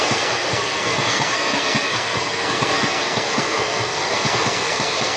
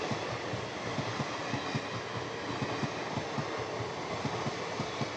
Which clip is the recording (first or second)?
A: second